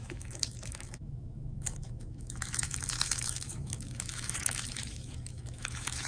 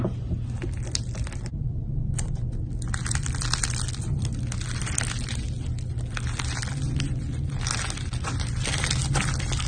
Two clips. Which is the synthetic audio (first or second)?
first